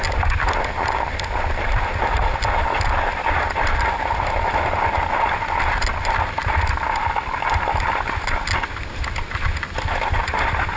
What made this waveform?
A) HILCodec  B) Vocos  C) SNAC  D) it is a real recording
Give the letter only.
D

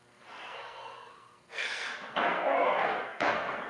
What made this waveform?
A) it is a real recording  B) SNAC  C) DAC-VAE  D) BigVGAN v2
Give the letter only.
B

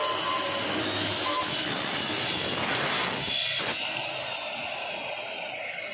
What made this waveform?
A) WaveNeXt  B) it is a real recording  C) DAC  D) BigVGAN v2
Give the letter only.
D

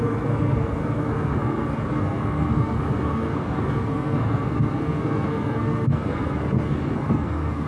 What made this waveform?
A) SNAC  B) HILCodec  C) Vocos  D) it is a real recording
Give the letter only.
A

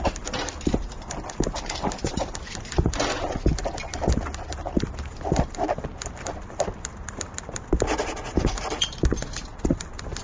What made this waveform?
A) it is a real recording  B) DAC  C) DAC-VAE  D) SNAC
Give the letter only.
A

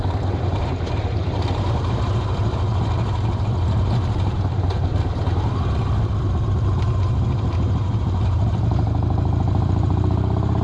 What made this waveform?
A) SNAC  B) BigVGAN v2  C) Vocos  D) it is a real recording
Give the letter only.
B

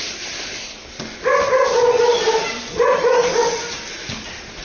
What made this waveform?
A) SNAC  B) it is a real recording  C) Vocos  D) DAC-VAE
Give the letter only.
B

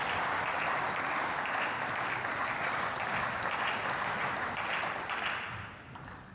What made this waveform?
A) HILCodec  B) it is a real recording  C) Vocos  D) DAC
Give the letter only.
B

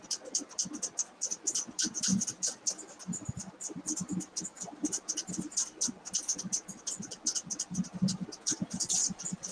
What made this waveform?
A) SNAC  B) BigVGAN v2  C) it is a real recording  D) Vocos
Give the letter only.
C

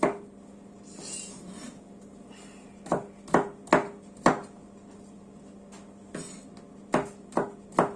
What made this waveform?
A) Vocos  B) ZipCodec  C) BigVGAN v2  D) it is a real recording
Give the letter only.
D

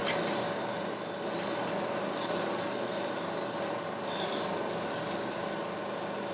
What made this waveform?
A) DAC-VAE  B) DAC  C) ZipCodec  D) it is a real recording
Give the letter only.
D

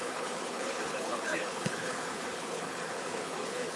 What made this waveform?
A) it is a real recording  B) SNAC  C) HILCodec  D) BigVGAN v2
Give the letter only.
C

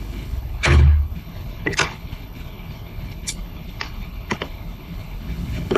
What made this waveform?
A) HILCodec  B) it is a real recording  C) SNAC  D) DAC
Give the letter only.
A